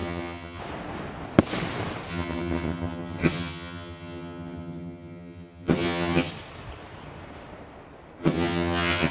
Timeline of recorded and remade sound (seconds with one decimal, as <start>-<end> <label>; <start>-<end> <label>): 0.0-0.6 remade; 0.6-2.1 recorded; 2.1-6.3 remade; 6.3-8.2 recorded; 8.2-9.1 remade